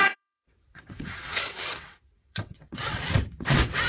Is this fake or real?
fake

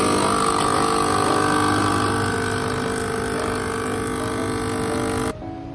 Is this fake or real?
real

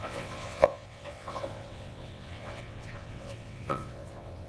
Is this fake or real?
fake